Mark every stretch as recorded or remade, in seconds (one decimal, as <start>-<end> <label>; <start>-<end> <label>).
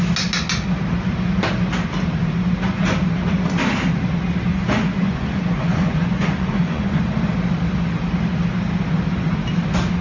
0.0-4.5 recorded; 4.5-7.0 remade; 7.0-10.0 recorded